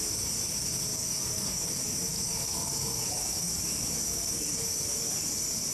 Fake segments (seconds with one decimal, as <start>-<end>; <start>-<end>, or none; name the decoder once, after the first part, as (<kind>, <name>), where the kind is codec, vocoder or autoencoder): 0.9-1.7 (codec, DAC); 2.1-5.1